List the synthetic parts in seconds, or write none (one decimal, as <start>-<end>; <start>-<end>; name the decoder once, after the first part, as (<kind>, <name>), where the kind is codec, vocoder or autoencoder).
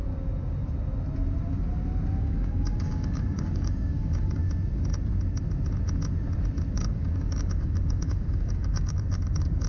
2.2-4.4 (codec, DAC); 6.7-9.7